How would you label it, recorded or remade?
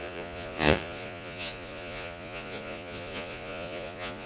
remade